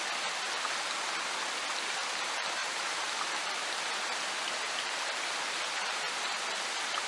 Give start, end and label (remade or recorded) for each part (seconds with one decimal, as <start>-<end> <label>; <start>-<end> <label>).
0.0-2.6 recorded; 2.6-3.8 remade; 3.8-5.8 recorded; 5.8-6.6 remade; 6.6-7.1 recorded